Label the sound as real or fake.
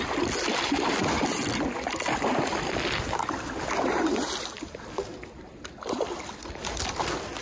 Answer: real